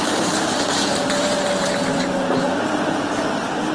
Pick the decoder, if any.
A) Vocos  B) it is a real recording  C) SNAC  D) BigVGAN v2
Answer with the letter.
D